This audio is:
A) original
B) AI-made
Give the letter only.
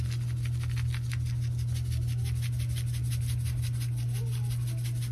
A